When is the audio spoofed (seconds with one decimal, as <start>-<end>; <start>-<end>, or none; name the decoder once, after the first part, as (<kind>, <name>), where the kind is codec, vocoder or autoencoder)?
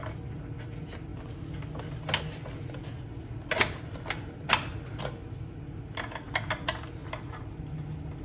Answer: none